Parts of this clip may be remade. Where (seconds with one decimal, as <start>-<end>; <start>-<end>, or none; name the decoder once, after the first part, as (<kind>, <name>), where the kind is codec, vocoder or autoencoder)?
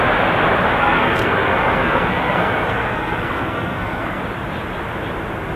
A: 0.8-4.2 (codec, SNAC)